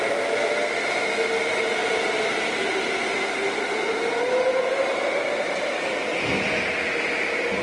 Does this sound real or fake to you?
real